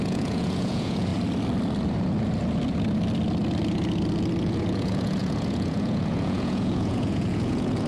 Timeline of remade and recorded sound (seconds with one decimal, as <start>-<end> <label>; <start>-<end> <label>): 0.0-1.1 remade; 1.1-4.4 recorded; 4.4-7.9 remade